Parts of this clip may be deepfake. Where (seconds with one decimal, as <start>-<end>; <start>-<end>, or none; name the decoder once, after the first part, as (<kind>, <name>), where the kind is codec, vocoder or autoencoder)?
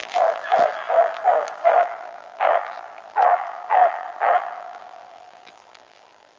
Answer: 0.0-6.4 (vocoder, BigVGAN v2)